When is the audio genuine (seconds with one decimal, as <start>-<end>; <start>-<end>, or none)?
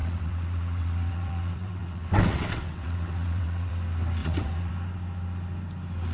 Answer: 3.7-4.2; 4.7-6.1